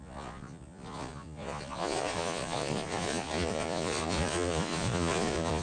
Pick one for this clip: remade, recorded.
remade